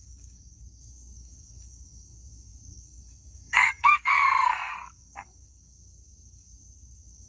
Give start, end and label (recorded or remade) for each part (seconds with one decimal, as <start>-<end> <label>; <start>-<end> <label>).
0.0-7.3 remade